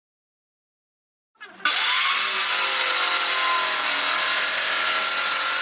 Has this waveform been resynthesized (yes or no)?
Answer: no